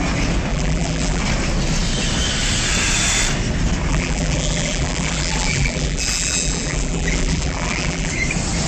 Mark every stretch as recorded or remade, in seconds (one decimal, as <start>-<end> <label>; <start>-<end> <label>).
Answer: 0.0-0.5 recorded; 0.5-1.2 remade; 1.2-3.9 recorded; 3.9-8.1 remade; 8.1-8.7 recorded